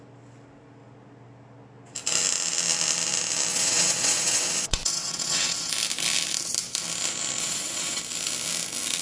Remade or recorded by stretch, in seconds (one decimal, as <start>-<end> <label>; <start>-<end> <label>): 0.0-3.5 recorded; 3.5-5.7 remade; 5.7-7.4 recorded; 7.4-8.0 remade; 8.0-9.0 recorded